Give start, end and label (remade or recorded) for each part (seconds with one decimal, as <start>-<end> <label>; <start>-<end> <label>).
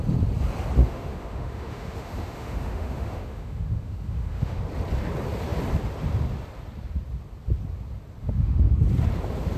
0.0-0.8 recorded; 0.8-4.6 remade; 4.6-8.2 recorded; 8.2-8.7 remade; 8.7-9.6 recorded